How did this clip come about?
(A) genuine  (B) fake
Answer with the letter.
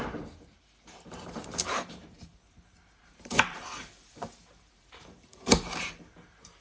B